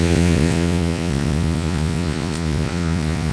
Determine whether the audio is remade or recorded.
remade